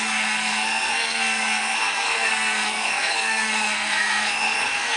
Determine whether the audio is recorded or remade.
remade